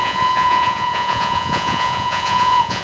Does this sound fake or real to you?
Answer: fake